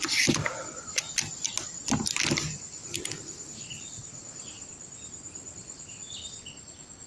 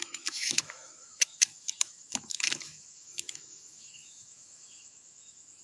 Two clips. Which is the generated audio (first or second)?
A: second